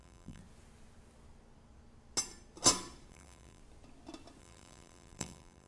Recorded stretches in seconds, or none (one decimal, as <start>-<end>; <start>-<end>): 0.4-3.1; 3.6-4.4